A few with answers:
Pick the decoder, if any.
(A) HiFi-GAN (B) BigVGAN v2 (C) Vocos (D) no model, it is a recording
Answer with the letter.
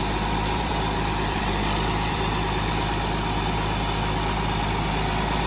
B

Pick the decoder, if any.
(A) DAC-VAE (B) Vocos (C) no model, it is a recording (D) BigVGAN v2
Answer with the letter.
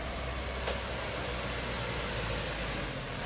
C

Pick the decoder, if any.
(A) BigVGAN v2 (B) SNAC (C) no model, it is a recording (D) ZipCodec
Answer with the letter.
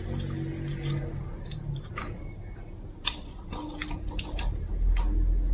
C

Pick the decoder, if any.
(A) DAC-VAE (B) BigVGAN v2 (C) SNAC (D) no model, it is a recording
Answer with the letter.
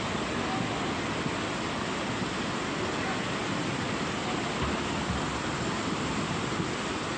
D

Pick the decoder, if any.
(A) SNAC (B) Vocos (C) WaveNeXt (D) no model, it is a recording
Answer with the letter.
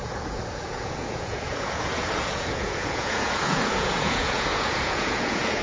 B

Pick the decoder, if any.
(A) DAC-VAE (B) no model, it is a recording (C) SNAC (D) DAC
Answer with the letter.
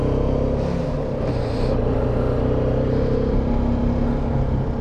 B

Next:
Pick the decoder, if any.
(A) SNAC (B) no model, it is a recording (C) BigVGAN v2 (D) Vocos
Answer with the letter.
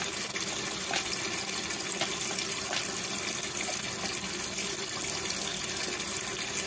B